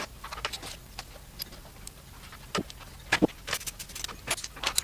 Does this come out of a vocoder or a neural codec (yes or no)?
no